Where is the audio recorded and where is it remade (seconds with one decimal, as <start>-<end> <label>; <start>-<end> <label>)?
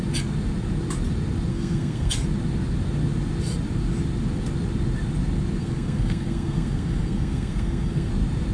0.0-1.5 recorded; 1.5-2.1 remade; 2.1-5.6 recorded; 5.6-8.1 remade; 8.1-8.5 recorded